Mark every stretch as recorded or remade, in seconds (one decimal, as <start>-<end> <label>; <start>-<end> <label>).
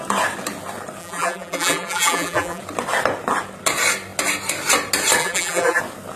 0.0-1.0 recorded; 1.0-2.6 remade; 2.6-5.2 recorded; 5.2-5.8 remade; 5.8-6.2 recorded